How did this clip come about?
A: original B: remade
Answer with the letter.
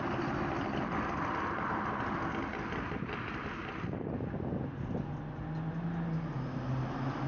A